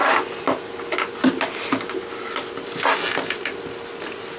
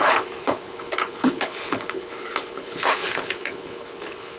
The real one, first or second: first